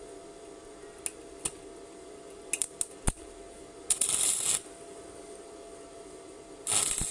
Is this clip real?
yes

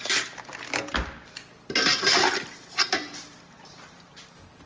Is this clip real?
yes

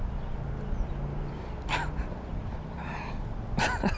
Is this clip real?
yes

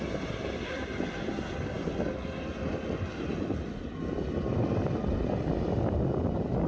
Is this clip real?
yes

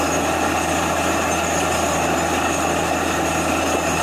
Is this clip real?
yes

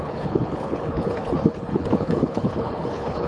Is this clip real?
no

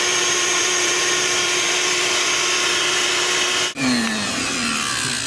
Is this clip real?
no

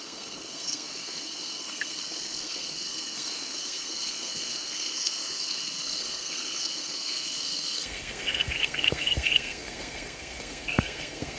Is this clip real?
no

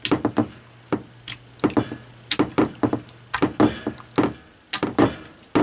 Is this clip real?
yes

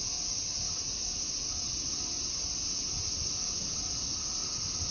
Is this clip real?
yes